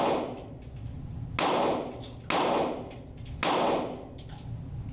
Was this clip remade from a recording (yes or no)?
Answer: no